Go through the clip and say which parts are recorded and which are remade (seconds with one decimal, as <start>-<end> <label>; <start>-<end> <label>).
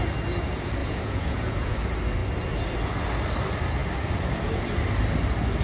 0.0-0.8 recorded; 0.8-1.7 remade; 1.7-5.6 recorded